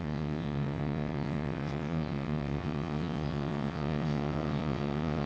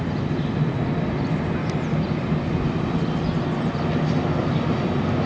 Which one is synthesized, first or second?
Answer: first